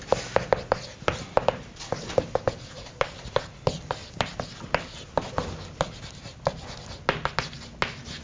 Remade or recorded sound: recorded